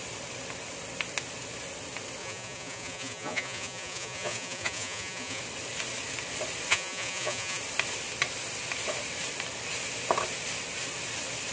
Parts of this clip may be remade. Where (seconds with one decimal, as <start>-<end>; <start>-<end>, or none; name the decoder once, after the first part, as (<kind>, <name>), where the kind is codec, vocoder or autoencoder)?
2.2-5.4 (vocoder, Vocos); 6.7-7.6

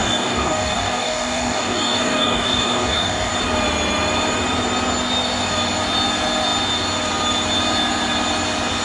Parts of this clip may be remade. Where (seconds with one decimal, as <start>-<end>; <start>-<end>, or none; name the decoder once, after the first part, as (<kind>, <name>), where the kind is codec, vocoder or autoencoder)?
0.0-3.3 (codec, DAC)

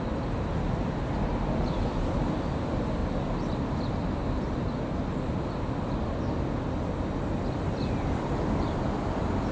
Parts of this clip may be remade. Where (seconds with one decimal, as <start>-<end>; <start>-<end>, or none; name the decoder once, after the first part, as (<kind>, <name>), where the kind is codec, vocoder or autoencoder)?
0.0-3.0 (vocoder, BigVGAN v2); 7.4-9.5

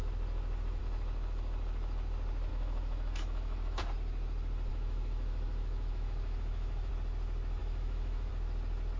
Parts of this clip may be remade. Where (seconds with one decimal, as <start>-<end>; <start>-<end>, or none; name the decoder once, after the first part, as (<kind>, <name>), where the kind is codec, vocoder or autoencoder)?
2.5-3.8 (autoencoder, DAC-VAE); 4.7-6.9; 7.6-8.3

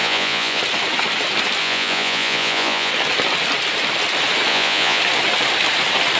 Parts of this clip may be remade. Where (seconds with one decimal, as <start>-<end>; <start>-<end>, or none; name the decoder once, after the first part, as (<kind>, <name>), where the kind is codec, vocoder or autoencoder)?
0.0-0.6 (vocoder, Vocos); 1.6-2.9; 4.5-5.0

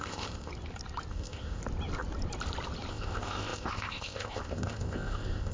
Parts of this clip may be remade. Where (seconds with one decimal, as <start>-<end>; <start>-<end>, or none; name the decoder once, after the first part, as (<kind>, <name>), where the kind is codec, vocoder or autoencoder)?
0.0-0.5 (codec, ZipCodec); 1.1-1.6; 2.9-5.5